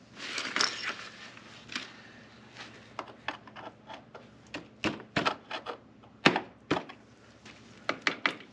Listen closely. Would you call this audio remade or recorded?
recorded